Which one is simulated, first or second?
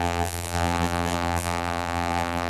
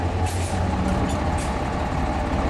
first